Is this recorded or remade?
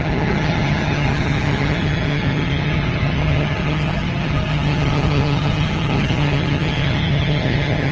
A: remade